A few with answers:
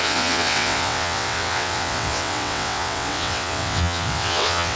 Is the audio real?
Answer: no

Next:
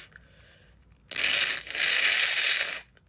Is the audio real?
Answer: yes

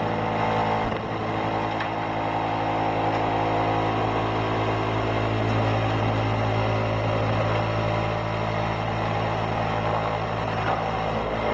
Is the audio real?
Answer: yes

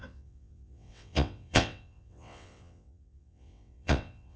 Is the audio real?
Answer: no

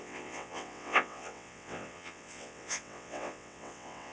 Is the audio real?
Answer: no